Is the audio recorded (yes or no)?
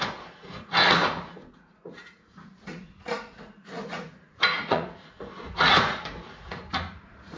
no